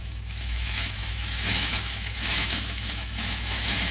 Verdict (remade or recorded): remade